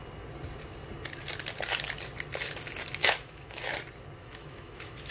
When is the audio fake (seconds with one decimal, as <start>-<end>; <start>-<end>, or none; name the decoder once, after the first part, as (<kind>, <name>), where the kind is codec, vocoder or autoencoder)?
3.0-3.7 (autoencoder, DAC-VAE); 4.2-5.1